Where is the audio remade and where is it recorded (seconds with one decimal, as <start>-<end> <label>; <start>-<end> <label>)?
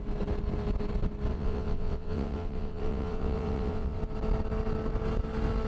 0.0-1.3 recorded; 1.3-4.0 remade; 4.0-5.7 recorded